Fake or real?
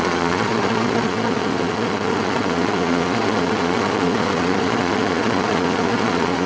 fake